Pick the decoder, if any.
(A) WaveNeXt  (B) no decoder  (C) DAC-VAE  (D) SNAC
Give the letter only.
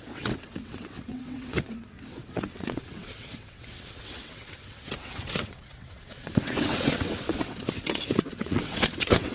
A